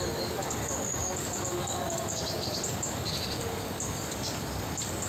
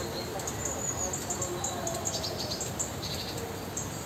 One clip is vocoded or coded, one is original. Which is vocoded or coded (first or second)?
first